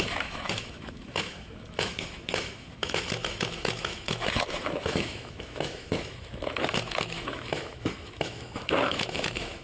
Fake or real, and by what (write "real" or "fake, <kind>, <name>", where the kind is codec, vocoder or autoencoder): fake, autoencoder, DAC-VAE